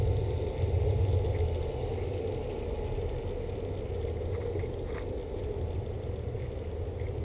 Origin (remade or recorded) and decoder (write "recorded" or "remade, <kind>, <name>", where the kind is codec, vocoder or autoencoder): recorded